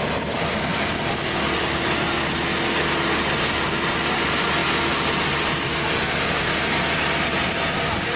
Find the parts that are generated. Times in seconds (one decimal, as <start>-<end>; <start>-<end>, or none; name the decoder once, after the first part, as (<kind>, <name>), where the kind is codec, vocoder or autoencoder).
none